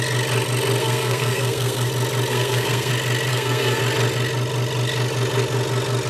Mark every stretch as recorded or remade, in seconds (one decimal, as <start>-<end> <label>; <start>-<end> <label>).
0.0-0.8 recorded; 0.8-1.9 remade; 1.9-2.3 recorded; 2.3-2.9 remade; 2.9-3.3 recorded; 3.3-3.8 remade; 3.8-6.1 recorded